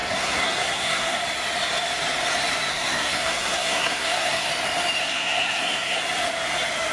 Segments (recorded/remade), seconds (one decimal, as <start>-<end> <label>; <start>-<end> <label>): 0.0-1.2 remade; 1.2-2.7 recorded; 2.7-4.5 remade; 4.5-5.0 recorded; 5.0-6.0 remade; 6.0-6.9 recorded